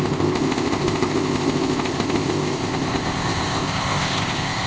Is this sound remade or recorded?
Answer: remade